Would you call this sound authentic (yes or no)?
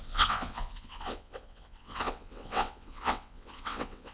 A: no